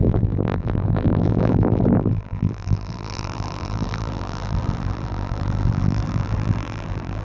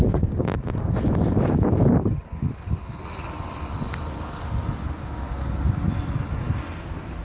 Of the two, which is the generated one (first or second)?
first